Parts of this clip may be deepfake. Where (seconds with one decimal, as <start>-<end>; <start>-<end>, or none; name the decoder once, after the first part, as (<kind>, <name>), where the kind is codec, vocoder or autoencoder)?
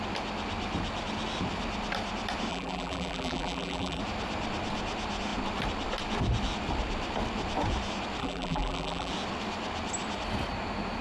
2.5-4.0 (vocoder, BigVGAN v2); 8.2-9.1